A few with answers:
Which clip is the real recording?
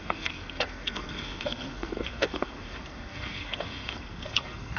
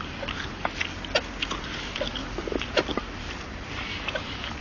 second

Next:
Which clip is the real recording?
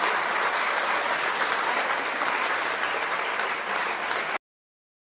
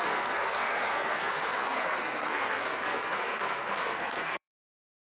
first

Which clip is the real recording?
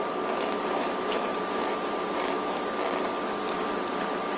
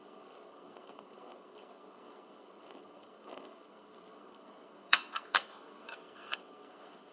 first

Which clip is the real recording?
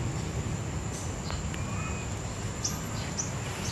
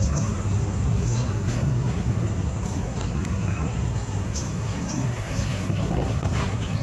first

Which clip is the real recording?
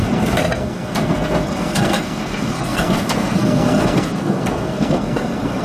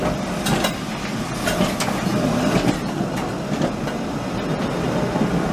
second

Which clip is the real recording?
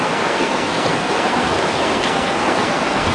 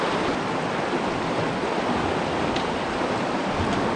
second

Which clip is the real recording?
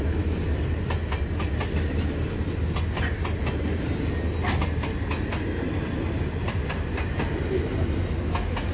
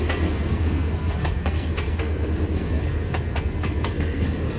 first